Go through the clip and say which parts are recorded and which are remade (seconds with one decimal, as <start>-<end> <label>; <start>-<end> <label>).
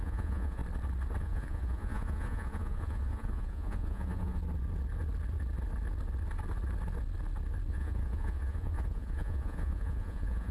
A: 0.0-0.6 remade; 0.6-1.2 recorded; 1.2-4.4 remade; 4.4-7.7 recorded; 7.7-10.5 remade